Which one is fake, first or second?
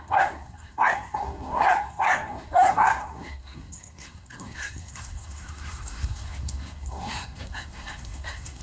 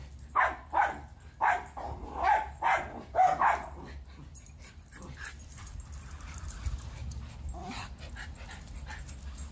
first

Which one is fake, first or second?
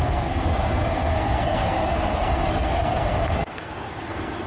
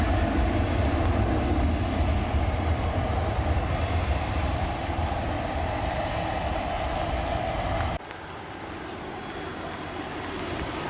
first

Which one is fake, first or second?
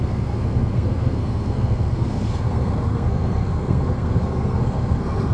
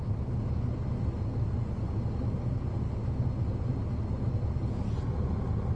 first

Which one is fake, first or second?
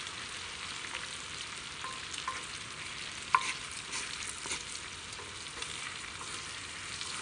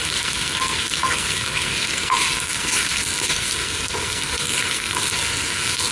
second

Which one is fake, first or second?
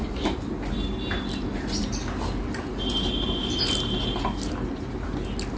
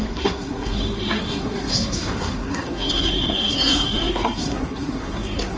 second